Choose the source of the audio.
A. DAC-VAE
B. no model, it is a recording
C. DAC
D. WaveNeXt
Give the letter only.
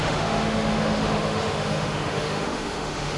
A